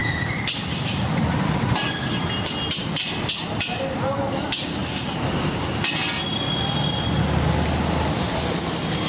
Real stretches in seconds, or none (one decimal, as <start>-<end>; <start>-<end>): 2.8-9.1